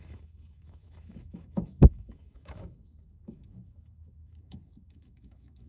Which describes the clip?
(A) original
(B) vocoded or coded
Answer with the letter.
B